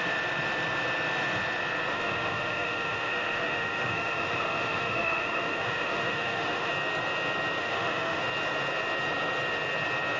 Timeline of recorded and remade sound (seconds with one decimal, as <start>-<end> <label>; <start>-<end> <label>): 0.0-1.9 recorded; 1.9-6.7 remade; 6.7-7.6 recorded; 7.6-8.2 remade; 8.2-10.2 recorded

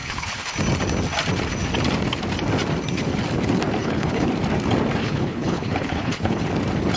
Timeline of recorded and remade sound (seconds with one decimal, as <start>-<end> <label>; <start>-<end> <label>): 0.0-0.5 remade; 0.5-3.8 recorded; 3.8-4.3 remade; 4.3-5.0 recorded; 5.0-6.4 remade; 6.4-7.0 recorded

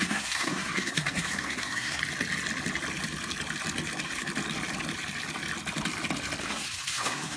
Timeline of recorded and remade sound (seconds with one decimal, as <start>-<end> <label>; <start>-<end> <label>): 0.0-2.0 remade; 2.0-6.4 recorded; 6.4-7.4 remade